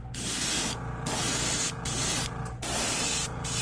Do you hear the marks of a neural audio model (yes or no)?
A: no